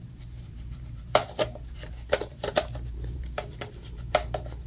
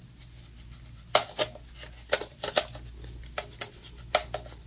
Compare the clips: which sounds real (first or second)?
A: second